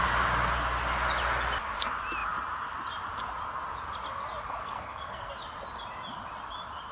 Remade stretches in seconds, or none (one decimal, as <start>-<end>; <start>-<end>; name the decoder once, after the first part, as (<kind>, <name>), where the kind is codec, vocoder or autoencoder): 4.6-5.3 (codec, SNAC)